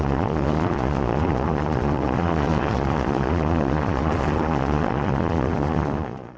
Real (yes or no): no